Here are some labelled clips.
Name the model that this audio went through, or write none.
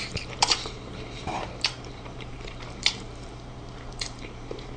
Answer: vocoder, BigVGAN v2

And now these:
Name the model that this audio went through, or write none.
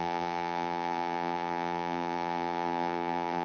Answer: vocoder, BigVGAN v2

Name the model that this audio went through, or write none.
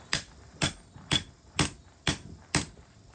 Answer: vocoder, BigVGAN v2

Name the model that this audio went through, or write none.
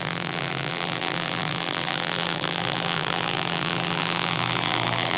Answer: vocoder, BigVGAN v2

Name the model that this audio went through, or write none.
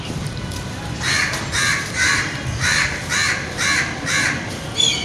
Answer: none